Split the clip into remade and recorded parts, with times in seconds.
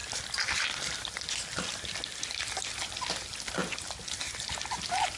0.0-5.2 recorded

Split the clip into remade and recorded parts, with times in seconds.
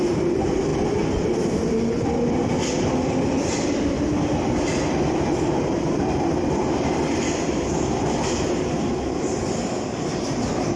0.0-10.8 recorded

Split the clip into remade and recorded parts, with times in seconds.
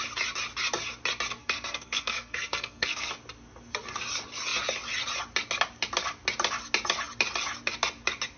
0.0-1.4 recorded; 1.4-3.1 remade; 3.1-8.4 recorded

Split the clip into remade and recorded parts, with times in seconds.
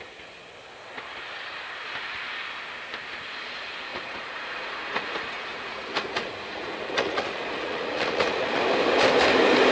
0.0-3.9 recorded; 3.9-8.6 remade; 8.6-9.7 recorded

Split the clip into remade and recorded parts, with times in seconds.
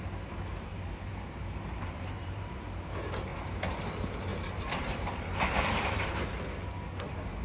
0.0-0.7 recorded; 0.7-2.9 remade; 2.9-4.3 recorded; 4.3-6.2 remade; 6.2-7.4 recorded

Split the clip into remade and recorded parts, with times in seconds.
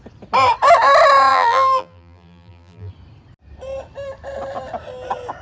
0.0-1.3 recorded; 1.3-2.9 remade; 2.9-5.4 recorded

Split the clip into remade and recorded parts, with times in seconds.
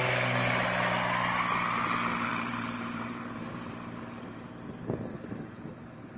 0.0-2.3 recorded; 2.3-4.5 remade; 4.5-6.2 recorded